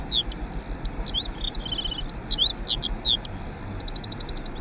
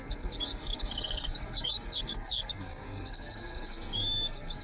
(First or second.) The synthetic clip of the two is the second